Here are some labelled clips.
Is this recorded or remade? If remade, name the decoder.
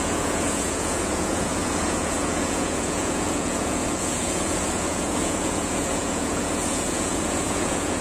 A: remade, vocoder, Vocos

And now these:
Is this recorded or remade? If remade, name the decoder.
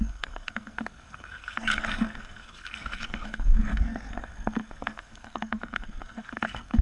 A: remade, codec, SNAC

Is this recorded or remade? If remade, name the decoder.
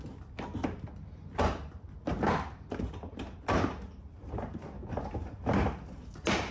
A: recorded